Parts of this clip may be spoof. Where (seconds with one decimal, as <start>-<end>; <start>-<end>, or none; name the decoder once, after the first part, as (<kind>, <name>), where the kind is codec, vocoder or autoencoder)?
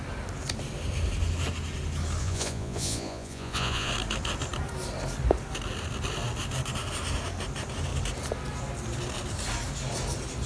2.2-3.9 (vocoder, Vocos)